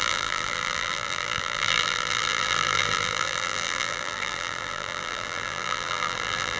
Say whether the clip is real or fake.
fake